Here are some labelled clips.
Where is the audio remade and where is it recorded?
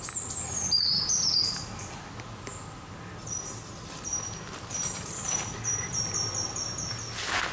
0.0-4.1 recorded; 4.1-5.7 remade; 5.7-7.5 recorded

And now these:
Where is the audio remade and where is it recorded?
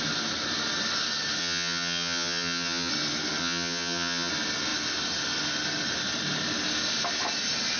0.0-1.4 recorded; 1.4-2.9 remade; 2.9-3.4 recorded; 3.4-4.3 remade; 4.3-7.8 recorded